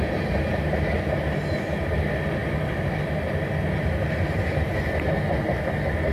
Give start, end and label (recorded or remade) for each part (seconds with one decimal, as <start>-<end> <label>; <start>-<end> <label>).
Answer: 0.0-6.1 recorded